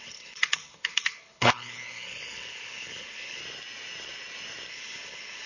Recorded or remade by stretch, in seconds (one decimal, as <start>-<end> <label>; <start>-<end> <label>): 0.0-3.4 remade; 3.4-4.7 recorded; 4.7-5.5 remade